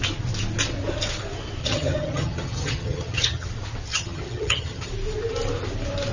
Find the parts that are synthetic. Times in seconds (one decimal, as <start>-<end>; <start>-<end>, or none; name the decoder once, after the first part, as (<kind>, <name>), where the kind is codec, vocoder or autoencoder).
1.6-3.5 (vocoder, HiFi-GAN); 3.9-4.9